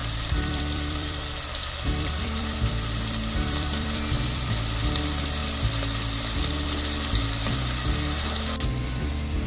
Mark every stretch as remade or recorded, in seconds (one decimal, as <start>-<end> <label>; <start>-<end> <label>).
0.0-4.8 remade; 4.8-9.5 recorded